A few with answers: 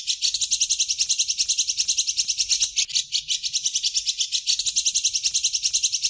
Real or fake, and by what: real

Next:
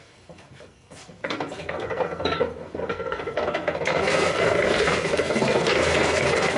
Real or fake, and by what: fake, codec, SNAC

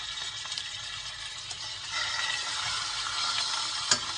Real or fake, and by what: real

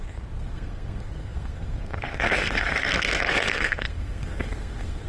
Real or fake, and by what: fake, codec, SNAC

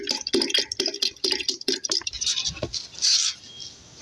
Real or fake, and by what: real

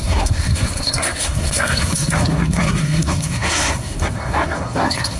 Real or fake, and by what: fake, codec, SNAC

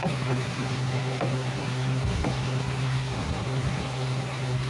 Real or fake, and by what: fake, codec, SNAC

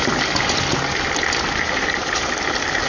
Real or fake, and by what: real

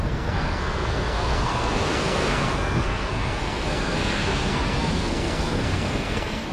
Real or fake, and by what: fake, codec, SNAC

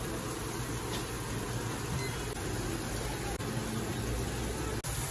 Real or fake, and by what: real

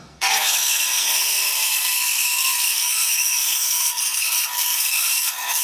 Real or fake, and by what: fake, codec, SNAC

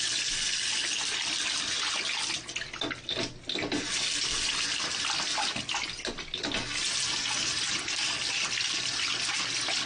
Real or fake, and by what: real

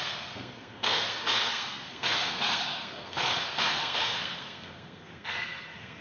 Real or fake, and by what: fake, codec, SNAC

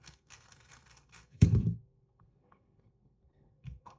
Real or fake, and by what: fake, codec, SNAC